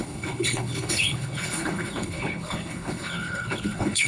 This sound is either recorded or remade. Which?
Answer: remade